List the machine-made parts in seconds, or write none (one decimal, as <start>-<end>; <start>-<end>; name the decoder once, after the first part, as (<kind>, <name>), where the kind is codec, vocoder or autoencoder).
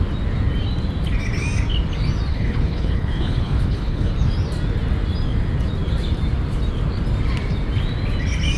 2.3-4.1 (codec, HILCodec)